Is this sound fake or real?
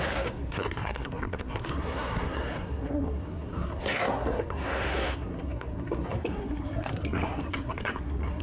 fake